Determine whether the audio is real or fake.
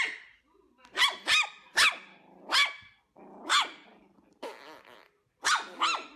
real